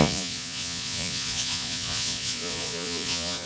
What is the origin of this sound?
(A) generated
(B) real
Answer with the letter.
A